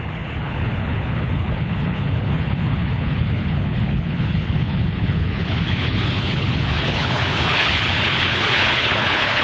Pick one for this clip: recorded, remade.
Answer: remade